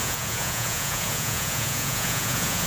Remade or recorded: remade